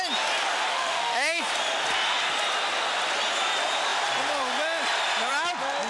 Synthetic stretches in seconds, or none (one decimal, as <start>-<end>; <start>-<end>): 0.7-1.4